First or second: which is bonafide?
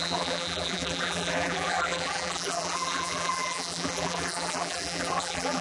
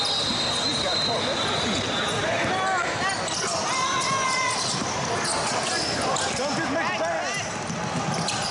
second